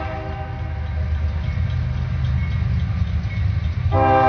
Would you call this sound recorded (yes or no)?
yes